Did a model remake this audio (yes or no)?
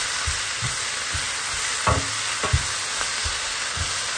no